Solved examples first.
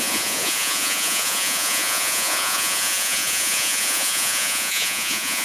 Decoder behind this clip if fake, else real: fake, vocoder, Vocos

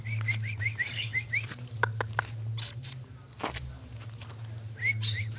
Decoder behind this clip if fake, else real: real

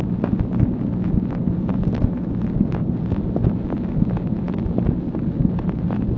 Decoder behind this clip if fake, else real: real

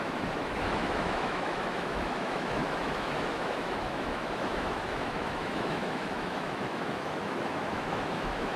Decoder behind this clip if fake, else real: fake, autoencoder, DAC-VAE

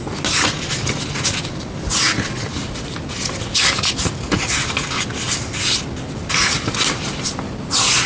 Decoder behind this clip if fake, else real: real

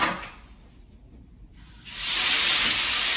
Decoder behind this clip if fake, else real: real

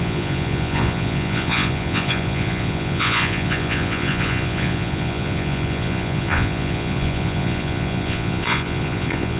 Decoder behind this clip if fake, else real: fake, vocoder, Vocos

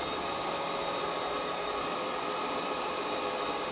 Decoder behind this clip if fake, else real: fake, vocoder, BigVGAN v2